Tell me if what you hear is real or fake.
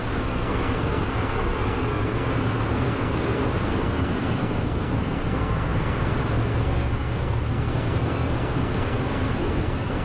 fake